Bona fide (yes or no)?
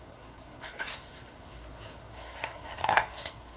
no